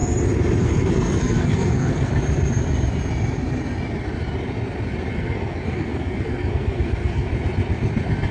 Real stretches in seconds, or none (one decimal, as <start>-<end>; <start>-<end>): 0.0-0.6; 2.1-5.1; 7.3-8.3